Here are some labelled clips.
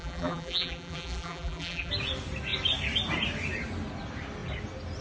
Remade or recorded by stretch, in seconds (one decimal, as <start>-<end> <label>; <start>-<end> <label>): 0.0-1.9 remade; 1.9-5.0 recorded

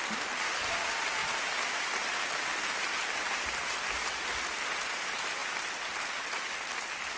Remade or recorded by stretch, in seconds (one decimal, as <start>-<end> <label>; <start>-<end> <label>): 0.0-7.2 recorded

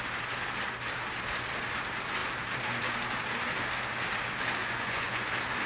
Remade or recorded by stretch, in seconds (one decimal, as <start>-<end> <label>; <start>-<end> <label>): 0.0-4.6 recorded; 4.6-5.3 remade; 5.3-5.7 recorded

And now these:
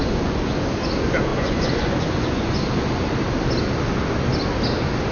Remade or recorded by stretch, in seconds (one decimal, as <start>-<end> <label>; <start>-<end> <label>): 0.0-0.6 remade; 0.6-1.3 recorded; 1.3-2.6 remade; 2.6-5.1 recorded